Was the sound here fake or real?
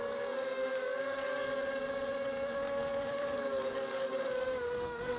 fake